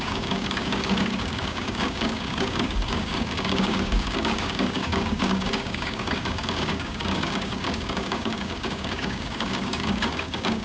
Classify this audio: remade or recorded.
remade